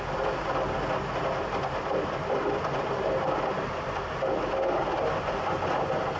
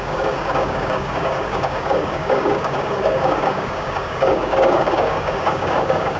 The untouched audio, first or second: first